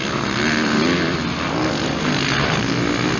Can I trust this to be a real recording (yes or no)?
yes